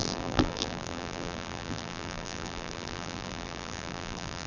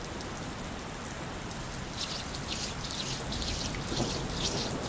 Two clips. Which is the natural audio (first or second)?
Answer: second